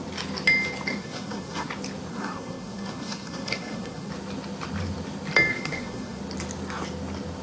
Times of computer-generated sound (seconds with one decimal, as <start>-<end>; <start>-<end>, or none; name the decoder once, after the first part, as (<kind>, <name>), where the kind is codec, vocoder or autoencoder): 0.9-1.7 (codec, SNAC); 2.1-4.1; 5.5-6.2